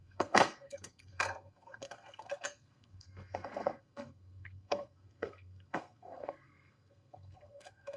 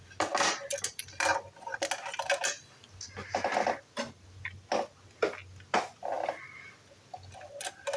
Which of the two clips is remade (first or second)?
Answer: first